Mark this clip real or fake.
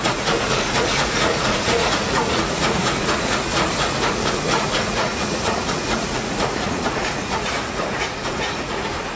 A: fake